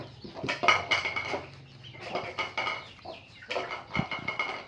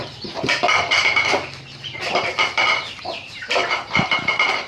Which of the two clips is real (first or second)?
first